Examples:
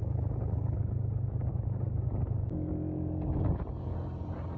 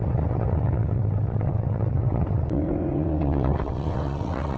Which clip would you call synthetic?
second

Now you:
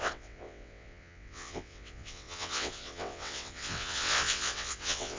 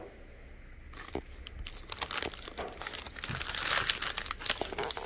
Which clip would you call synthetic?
first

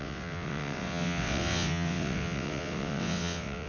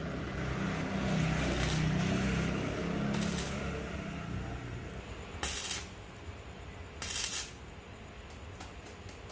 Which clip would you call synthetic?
first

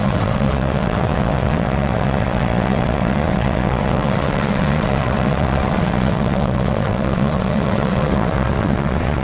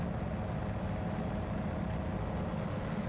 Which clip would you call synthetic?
first